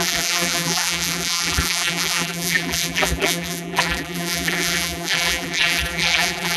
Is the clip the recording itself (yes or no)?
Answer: no